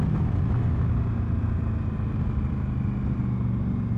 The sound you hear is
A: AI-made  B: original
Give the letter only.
B